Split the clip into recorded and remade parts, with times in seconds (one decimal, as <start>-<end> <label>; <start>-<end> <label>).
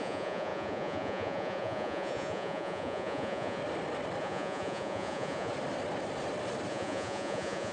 0.0-3.6 remade; 3.6-4.2 recorded; 4.2-5.5 remade; 5.5-6.7 recorded; 6.7-7.7 remade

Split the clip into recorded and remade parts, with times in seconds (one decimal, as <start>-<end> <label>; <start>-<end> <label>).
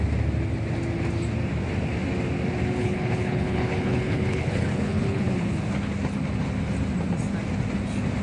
0.0-2.8 recorded; 2.8-5.6 remade; 5.6-8.2 recorded